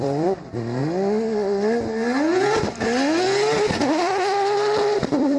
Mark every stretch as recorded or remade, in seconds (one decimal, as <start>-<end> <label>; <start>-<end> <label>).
0.0-0.8 remade; 0.8-4.0 recorded; 4.0-5.4 remade